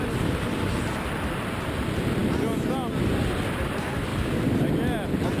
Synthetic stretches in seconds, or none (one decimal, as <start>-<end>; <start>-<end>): none